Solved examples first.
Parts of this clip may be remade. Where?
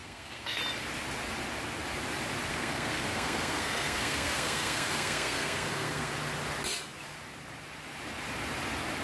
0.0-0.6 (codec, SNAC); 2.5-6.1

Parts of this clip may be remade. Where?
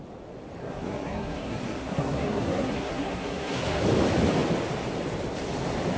0.6-3.8 (codec, SNAC)